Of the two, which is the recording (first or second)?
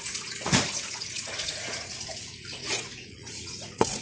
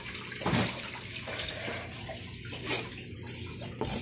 second